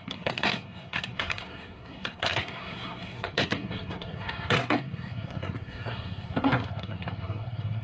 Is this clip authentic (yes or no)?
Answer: no